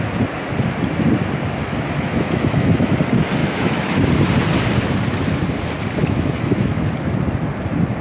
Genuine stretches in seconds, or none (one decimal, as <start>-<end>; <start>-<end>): 0.0-1.6; 2.9-3.4; 4.0-6.0; 6.8-8.0